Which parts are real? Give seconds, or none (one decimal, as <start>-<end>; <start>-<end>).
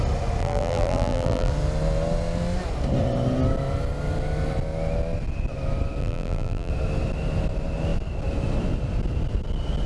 0.0-0.4; 1.5-6.0; 6.7-9.9